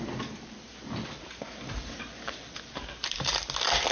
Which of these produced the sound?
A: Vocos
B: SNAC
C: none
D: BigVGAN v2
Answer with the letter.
D